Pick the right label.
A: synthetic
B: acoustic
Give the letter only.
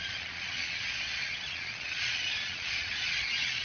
A